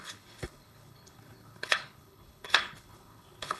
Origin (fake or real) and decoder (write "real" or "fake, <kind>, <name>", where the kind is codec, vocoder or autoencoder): fake, codec, HILCodec